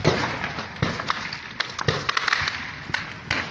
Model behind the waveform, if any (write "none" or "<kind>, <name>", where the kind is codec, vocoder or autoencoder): none